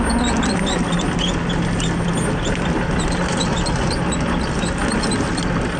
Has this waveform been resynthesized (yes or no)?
no